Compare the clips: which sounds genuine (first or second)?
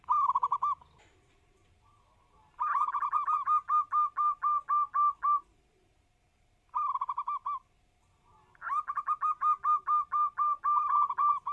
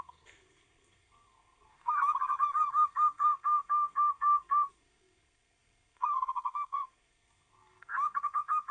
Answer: first